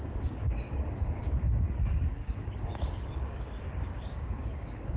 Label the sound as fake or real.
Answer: fake